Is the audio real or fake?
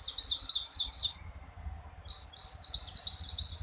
real